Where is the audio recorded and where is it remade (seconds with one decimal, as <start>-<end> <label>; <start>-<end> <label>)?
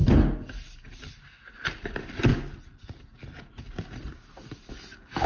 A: 0.0-5.3 recorded